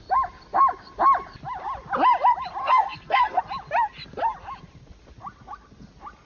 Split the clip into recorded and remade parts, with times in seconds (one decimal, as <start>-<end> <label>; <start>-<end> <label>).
0.0-2.6 recorded; 2.6-3.4 remade; 3.4-6.3 recorded